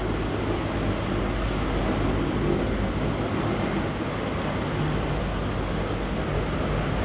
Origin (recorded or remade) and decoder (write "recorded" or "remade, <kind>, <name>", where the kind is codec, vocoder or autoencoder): recorded